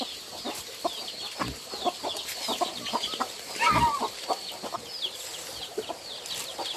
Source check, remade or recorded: recorded